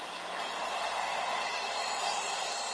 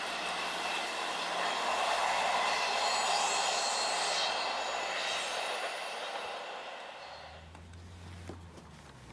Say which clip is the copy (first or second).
first